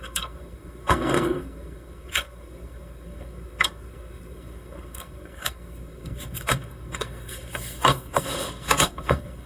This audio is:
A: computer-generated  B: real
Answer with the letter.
A